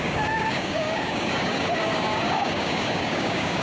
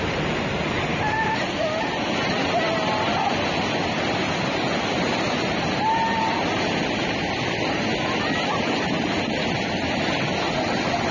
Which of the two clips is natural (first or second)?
second